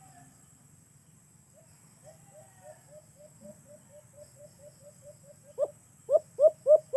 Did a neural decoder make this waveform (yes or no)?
no